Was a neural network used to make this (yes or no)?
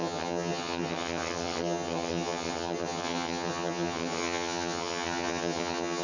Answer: yes